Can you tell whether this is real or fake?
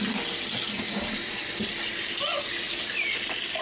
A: real